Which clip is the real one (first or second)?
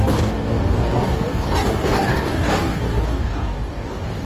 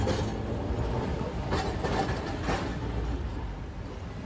second